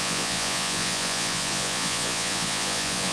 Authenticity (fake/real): fake